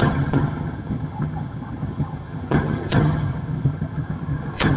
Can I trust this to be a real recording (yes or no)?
no